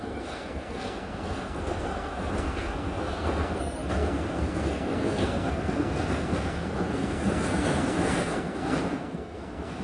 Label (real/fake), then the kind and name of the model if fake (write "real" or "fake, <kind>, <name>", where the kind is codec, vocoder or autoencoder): fake, codec, SNAC